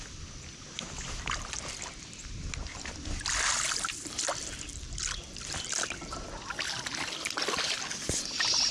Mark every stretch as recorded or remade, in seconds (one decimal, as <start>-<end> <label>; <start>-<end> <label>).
0.0-2.2 recorded; 2.2-6.0 remade; 6.0-8.7 recorded